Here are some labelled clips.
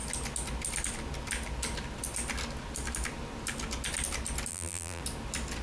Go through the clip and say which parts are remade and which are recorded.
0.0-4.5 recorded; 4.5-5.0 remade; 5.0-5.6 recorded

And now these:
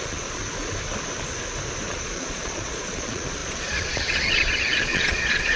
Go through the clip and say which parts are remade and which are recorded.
0.0-0.4 remade; 0.4-1.9 recorded; 1.9-5.6 remade